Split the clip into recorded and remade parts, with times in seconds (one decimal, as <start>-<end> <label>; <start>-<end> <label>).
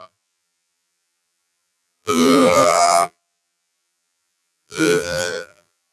0.0-5.9 remade